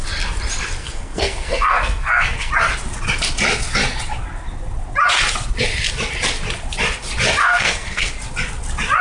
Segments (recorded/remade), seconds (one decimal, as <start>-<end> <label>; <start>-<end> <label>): 0.0-0.8 recorded; 0.8-2.5 remade; 2.5-7.4 recorded; 7.4-8.1 remade; 8.1-9.0 recorded